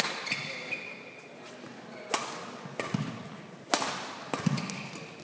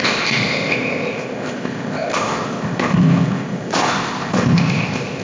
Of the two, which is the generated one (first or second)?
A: second